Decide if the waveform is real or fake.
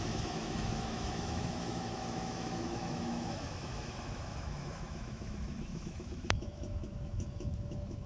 fake